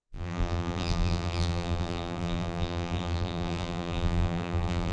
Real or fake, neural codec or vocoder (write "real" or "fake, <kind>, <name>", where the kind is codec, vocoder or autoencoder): fake, vocoder, BigVGAN v2